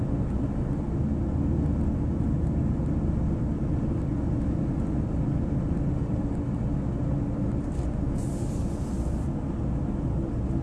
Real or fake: real